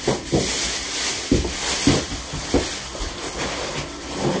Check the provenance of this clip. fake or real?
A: real